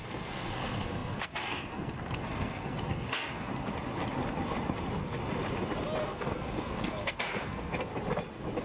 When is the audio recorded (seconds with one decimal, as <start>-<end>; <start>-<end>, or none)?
3.5-6.0; 7.9-8.6